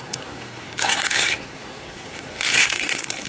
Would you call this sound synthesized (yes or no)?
yes